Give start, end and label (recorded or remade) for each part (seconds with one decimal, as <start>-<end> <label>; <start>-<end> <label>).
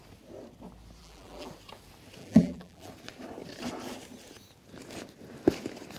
0.0-1.0 recorded; 1.0-1.5 remade; 1.5-2.2 recorded; 2.2-2.9 remade; 2.9-6.0 recorded